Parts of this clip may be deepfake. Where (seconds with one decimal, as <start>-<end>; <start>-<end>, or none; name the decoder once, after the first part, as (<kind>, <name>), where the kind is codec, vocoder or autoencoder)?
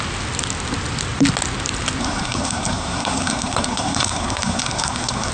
2.0-5.3 (codec, SNAC)